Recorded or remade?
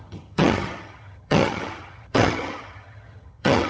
remade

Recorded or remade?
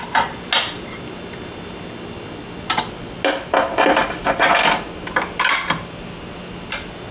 recorded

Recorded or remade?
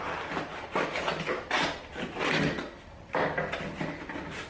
recorded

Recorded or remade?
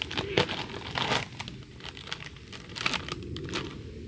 recorded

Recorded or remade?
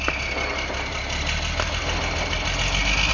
recorded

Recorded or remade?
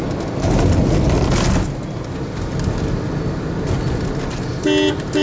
recorded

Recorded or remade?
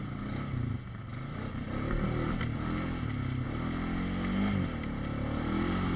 recorded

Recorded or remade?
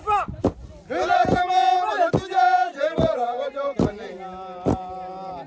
recorded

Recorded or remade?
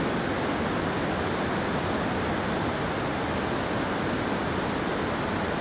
recorded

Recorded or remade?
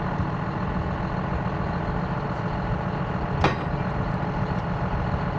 recorded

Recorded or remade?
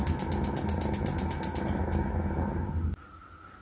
recorded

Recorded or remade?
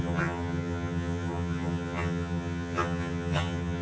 remade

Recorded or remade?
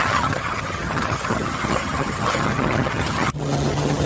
remade